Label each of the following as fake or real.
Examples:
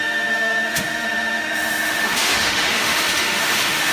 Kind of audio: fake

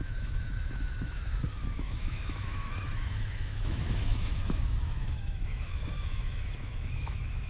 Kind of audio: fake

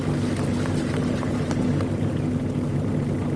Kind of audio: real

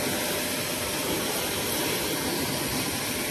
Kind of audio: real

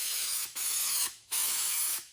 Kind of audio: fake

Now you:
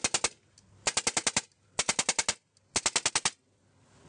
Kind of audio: real